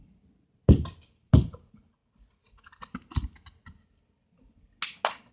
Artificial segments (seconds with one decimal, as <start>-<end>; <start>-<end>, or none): none